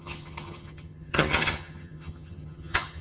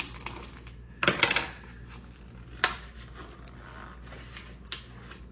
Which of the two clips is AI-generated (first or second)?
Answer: first